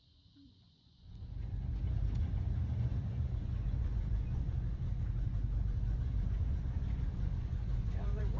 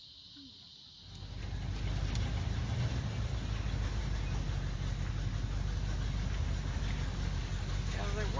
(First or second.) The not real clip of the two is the first